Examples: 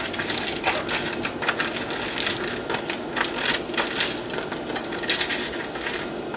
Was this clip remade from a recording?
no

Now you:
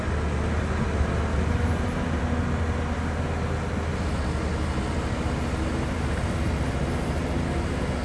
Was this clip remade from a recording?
no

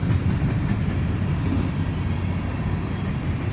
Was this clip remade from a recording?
no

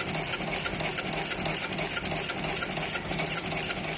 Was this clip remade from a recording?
no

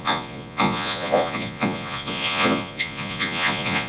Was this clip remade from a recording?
yes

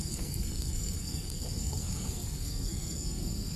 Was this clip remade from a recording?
yes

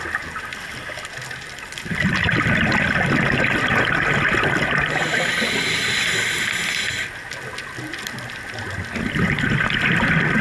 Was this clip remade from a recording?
no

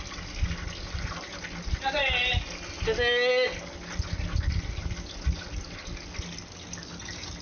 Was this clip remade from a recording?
no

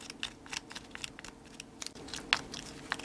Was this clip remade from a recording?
no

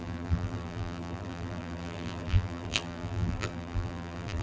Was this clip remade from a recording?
yes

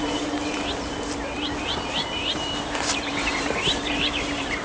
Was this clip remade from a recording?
yes